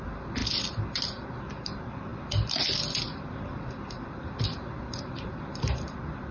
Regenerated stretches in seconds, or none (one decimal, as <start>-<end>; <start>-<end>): none